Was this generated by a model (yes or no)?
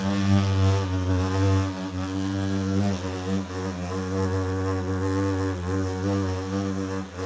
no